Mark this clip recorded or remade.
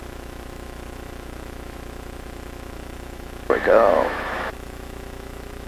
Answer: remade